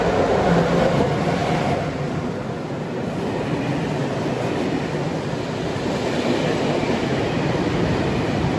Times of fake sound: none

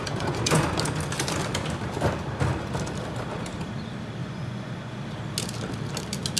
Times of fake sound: 0.0-0.6 (vocoder, Vocos); 4.2-5.0